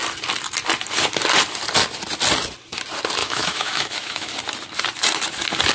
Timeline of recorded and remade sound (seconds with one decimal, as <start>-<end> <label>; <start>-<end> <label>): 0.0-3.2 recorded; 3.2-4.3 remade; 4.3-5.7 recorded